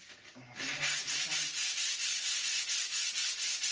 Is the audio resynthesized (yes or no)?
no